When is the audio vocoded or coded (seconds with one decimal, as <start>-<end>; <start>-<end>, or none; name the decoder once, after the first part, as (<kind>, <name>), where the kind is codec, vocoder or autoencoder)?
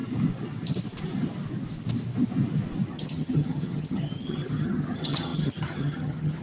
2.9-6.4 (vocoder, HiFi-GAN)